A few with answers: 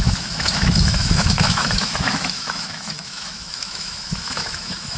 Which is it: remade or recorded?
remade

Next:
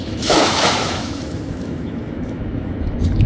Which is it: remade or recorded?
remade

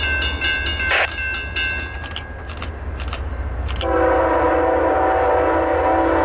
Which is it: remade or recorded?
recorded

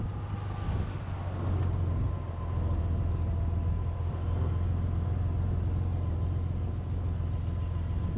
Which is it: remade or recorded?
recorded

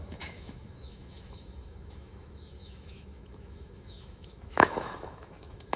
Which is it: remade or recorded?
remade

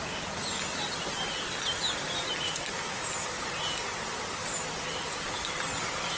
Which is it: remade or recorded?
recorded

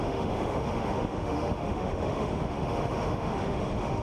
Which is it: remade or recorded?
remade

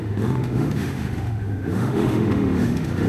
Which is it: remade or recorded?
remade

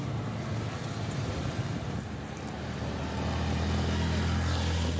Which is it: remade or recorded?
recorded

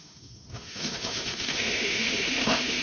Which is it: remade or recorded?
remade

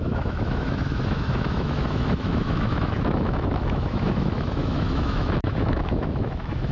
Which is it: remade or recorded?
remade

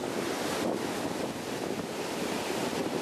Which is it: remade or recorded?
recorded